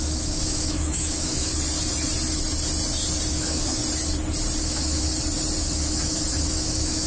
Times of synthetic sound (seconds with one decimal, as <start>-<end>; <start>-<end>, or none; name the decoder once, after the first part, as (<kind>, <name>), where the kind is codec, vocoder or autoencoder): 0.0-1.5 (autoencoder, DAC-VAE); 3.3-3.8; 4.6-5.1; 5.6-7.1